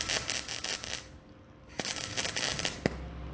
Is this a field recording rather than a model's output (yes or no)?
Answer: yes